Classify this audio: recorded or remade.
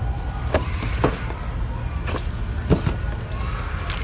recorded